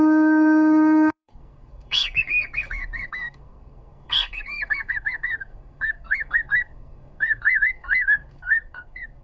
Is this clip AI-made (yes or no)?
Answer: yes